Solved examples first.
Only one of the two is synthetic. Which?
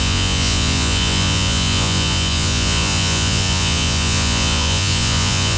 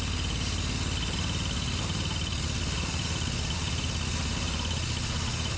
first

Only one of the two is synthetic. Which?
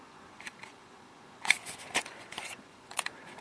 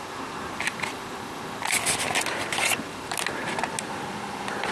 first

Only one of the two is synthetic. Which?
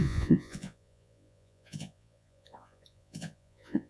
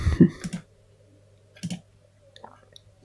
first